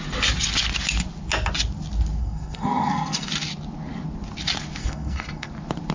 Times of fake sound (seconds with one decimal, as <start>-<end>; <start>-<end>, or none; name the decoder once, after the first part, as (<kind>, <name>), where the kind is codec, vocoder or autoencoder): 2.2-3.3 (codec, SNAC); 4.8-5.5